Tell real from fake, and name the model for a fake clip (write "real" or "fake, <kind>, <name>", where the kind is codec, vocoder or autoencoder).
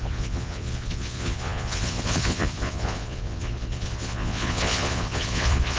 fake, vocoder, Vocos